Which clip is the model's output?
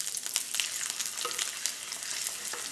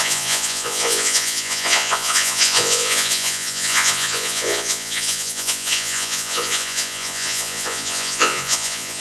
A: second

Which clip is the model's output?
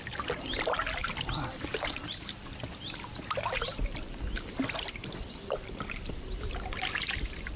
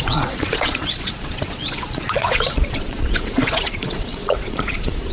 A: second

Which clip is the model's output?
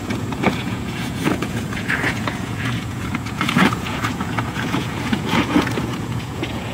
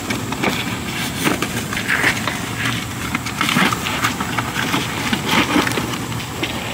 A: first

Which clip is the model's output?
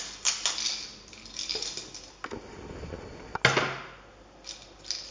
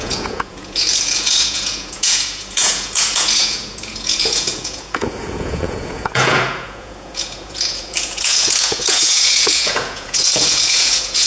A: second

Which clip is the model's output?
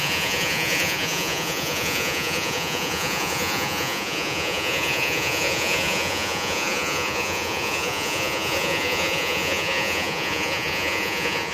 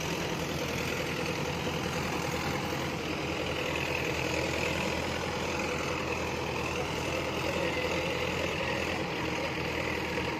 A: first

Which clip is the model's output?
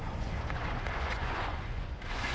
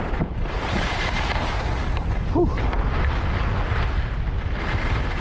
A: first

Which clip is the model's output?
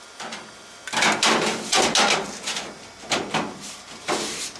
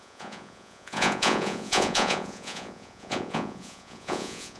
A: second